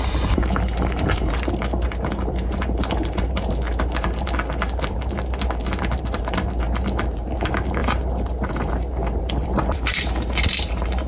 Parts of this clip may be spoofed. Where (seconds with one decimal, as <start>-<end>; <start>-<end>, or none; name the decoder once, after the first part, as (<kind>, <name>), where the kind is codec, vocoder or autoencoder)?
0.0-11.1 (vocoder, BigVGAN v2)